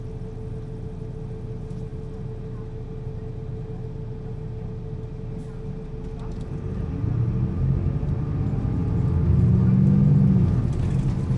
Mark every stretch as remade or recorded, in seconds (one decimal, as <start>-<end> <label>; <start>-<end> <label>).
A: 0.0-11.4 recorded